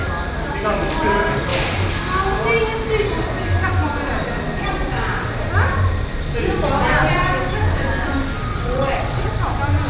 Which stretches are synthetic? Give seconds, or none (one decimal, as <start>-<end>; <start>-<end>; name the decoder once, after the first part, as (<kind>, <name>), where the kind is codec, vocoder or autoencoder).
8.5-9.3 (vocoder, WaveNeXt)